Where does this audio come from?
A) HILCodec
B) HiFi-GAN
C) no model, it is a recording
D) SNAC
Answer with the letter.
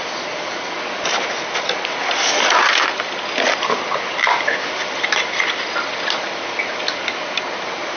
C